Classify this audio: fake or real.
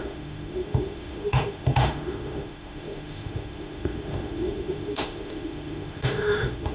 fake